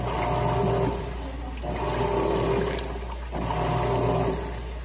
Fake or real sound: real